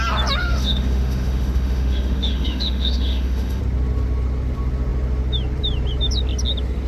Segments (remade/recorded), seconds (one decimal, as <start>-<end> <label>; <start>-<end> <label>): 0.0-0.4 recorded; 0.4-3.6 remade; 3.6-6.9 recorded